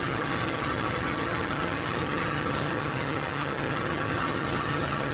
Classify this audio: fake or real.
fake